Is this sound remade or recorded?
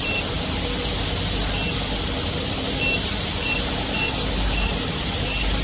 recorded